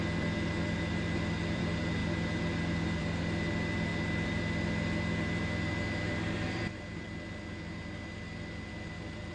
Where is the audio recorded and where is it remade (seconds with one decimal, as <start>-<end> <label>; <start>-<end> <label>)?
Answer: 0.0-9.3 remade